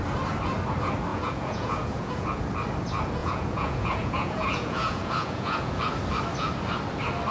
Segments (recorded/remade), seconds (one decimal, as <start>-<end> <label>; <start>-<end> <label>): 0.0-1.1 recorded; 1.1-2.4 remade; 2.4-3.2 recorded; 3.2-5.8 remade; 5.8-7.3 recorded